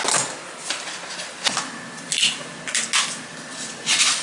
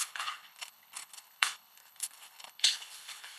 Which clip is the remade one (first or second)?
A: second